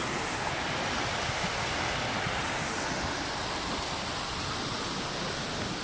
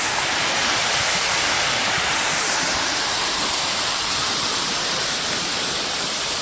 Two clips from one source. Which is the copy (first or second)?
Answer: second